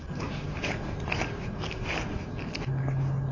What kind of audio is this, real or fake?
real